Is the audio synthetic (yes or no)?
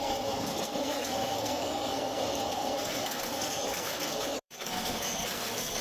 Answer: yes